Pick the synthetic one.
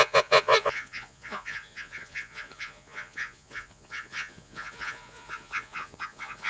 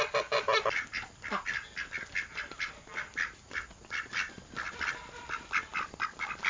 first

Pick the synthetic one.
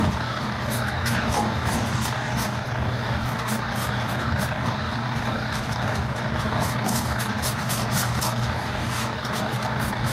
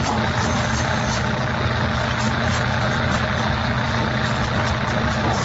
first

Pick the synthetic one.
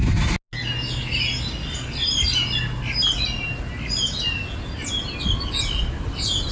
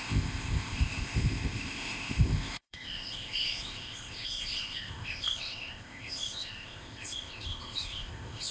second